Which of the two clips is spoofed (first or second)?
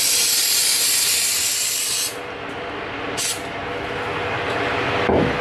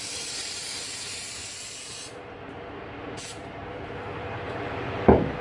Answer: second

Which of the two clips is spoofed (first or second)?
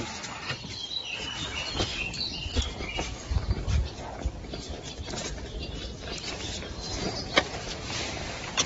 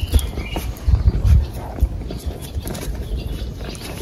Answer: first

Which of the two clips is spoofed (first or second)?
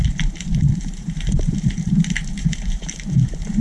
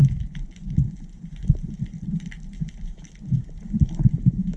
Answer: first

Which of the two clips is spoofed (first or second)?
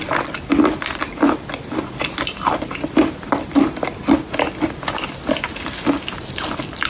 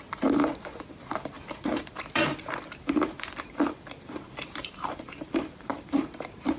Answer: second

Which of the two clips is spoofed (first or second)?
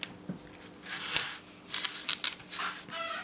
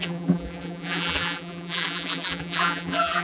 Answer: second